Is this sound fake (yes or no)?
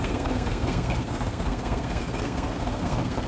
yes